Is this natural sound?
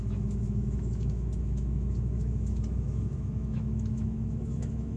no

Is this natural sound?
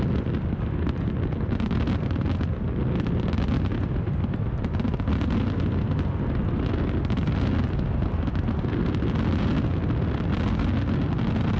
yes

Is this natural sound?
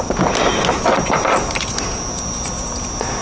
yes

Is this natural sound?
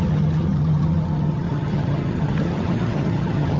no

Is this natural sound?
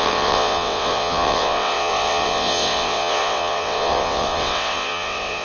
no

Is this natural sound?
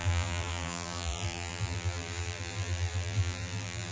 no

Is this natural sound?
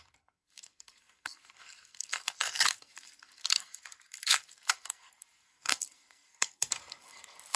no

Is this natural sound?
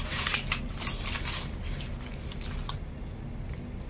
yes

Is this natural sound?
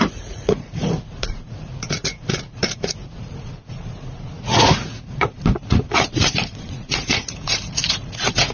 no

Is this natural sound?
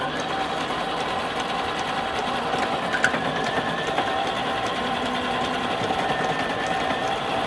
no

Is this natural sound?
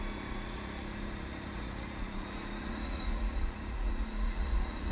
no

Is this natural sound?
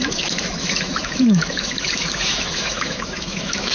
no